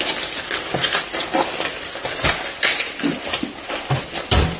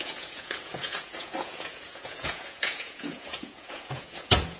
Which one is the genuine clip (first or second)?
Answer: first